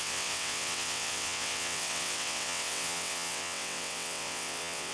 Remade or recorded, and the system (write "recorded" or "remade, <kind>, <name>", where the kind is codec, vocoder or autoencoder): remade, vocoder, WaveNeXt